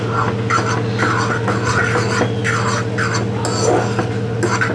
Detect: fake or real real